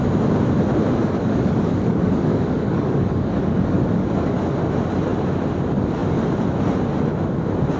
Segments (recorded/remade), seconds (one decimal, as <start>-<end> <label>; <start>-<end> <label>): 0.0-1.0 recorded; 1.0-4.5 remade; 4.5-7.8 recorded